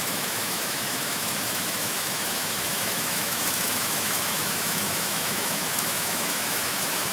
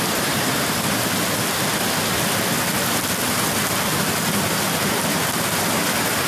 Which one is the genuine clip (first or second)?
second